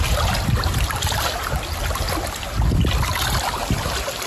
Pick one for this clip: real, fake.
real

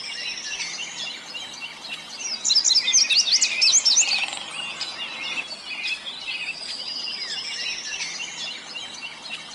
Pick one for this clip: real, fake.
real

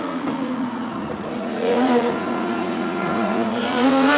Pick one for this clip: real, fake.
fake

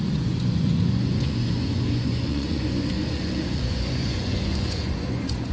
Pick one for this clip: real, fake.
fake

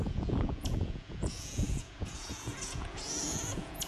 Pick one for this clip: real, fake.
fake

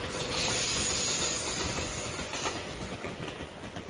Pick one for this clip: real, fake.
fake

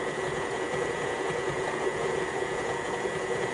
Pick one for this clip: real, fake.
fake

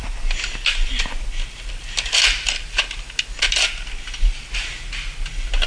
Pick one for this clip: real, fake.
real